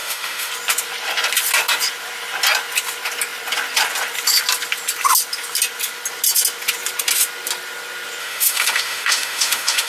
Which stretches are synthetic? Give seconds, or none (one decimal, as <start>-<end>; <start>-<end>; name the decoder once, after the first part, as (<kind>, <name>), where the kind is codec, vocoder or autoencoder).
0.0-0.5 (autoencoder, DAC-VAE); 8.2-9.9